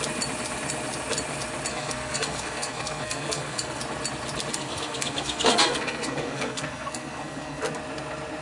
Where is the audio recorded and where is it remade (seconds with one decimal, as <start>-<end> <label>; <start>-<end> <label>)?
0.0-1.7 recorded; 1.7-3.8 remade; 3.8-4.5 recorded; 4.5-7.6 remade; 7.6-8.4 recorded